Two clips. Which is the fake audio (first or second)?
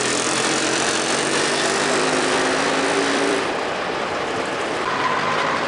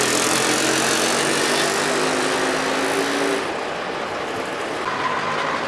first